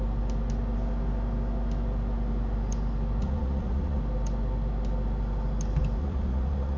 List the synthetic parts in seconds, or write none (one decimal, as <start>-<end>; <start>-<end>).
3.2-4.0; 6.0-6.8